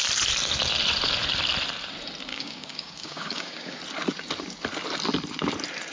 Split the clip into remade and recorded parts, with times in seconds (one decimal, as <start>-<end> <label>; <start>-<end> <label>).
0.0-2.3 recorded; 2.3-3.8 remade; 3.8-5.9 recorded